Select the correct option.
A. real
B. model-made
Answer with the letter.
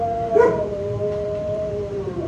B